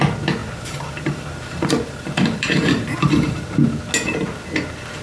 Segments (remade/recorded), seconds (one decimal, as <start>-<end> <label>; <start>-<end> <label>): 0.0-0.4 recorded; 0.4-3.4 remade; 3.4-5.0 recorded